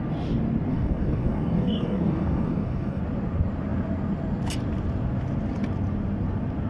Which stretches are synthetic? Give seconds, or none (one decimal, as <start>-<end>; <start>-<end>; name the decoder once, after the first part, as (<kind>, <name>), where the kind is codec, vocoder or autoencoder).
0.7-3.0 (codec, DAC)